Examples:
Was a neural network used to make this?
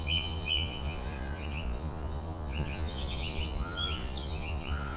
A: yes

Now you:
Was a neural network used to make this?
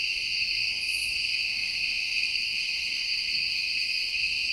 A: yes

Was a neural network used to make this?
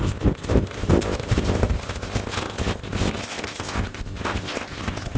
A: yes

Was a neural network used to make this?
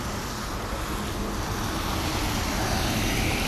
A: no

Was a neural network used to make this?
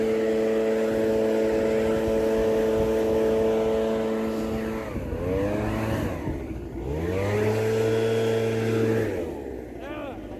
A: no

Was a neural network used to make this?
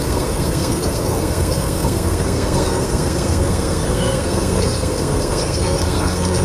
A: yes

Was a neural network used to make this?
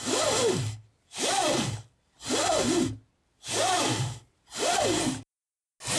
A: no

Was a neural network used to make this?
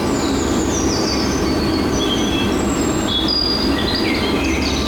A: no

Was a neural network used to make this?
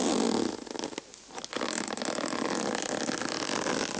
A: no